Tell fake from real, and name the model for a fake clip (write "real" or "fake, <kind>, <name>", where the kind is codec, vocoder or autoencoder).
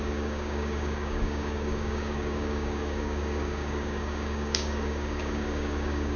fake, codec, DAC